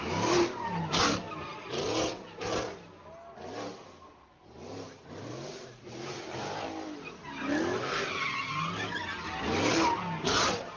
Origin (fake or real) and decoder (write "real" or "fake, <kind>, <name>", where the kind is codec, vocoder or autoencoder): real